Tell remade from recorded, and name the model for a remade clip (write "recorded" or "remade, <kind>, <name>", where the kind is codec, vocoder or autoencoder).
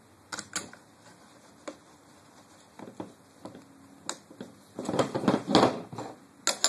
recorded